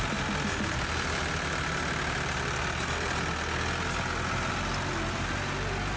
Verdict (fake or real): real